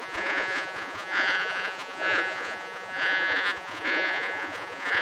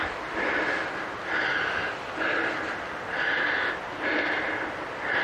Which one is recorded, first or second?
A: second